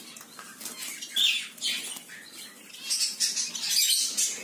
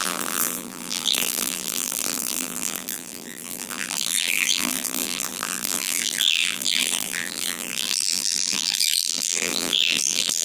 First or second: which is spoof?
second